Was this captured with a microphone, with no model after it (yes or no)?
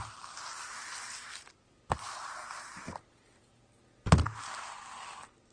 yes